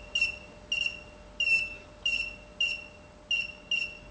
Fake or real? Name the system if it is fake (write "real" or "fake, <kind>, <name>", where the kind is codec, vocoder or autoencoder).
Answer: real